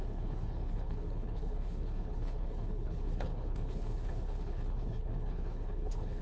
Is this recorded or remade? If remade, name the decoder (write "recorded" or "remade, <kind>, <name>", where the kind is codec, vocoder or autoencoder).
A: remade, codec, HILCodec